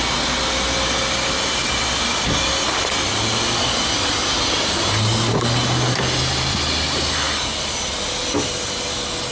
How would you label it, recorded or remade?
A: recorded